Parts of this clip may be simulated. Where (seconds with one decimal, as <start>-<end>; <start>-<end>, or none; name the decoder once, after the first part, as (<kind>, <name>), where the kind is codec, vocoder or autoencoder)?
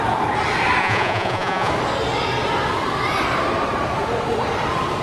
0.8-1.7 (vocoder, Vocos)